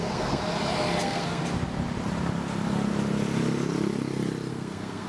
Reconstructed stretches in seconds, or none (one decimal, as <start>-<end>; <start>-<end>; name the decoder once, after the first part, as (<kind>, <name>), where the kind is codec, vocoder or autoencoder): 0.0-0.4 (codec, SNAC); 1.0-1.4; 4.5-5.1

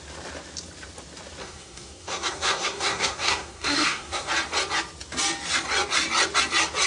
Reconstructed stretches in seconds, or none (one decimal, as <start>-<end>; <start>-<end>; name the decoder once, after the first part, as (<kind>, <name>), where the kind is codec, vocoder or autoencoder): 1.4-4.3 (codec, SNAC)

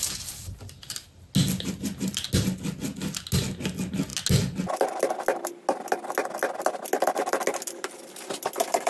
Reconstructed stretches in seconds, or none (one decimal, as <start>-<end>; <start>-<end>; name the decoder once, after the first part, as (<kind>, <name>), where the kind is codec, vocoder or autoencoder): none

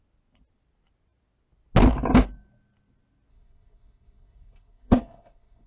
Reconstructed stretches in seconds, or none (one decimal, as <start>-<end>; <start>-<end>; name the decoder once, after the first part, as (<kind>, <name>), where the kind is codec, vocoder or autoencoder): 3.3-5.7 (codec, SNAC)

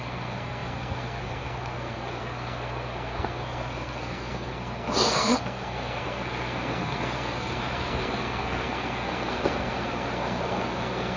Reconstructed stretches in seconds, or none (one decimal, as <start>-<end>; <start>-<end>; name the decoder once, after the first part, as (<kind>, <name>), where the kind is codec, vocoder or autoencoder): 0.0-11.2 (codec, SNAC)

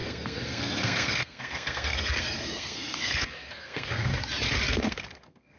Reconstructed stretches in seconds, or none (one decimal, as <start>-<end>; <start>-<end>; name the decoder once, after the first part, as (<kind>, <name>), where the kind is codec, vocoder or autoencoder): 0.0-4.1 (codec, SNAC); 4.7-5.6

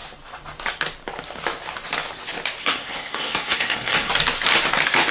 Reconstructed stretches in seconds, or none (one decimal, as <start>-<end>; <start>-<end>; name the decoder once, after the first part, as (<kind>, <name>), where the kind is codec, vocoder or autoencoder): 2.6-4.1 (codec, SNAC)